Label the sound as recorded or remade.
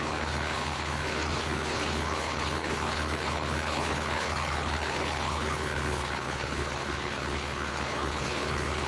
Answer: remade